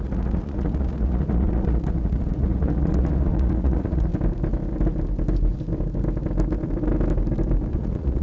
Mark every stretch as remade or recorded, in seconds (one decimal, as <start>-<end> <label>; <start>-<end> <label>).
0.0-4.1 remade; 4.1-7.7 recorded; 7.7-8.2 remade